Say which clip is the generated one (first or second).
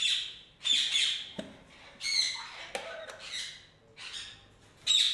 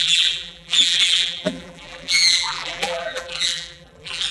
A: second